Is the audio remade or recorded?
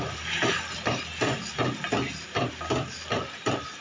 remade